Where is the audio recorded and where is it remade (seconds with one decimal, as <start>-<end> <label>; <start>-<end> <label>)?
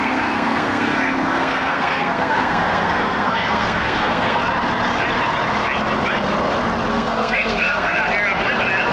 0.0-4.4 remade; 4.4-6.9 recorded; 6.9-8.0 remade; 8.0-8.9 recorded